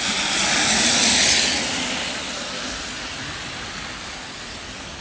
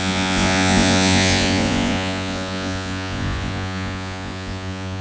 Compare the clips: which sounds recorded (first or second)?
first